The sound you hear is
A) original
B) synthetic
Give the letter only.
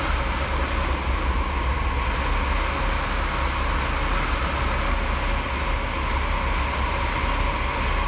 A